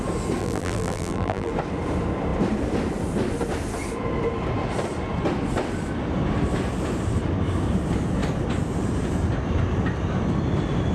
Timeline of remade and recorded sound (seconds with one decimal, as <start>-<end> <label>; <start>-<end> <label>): 0.0-0.4 recorded; 0.4-1.5 remade; 1.5-10.9 recorded